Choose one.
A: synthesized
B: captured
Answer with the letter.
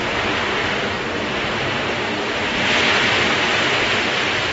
B